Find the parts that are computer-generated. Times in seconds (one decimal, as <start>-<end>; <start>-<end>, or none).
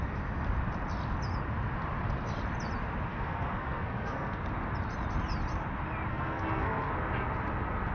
3.1-4.4; 6.1-6.9